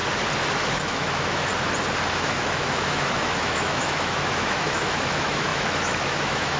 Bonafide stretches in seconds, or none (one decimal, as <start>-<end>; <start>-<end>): 0.0-0.7; 1.5-2.1